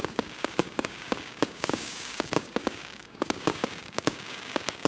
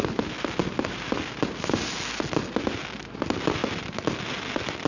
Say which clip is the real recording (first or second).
second